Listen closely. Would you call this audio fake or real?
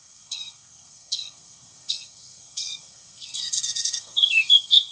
fake